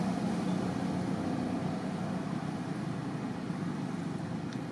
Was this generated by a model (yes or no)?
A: no